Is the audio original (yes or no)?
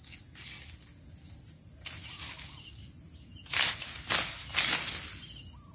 yes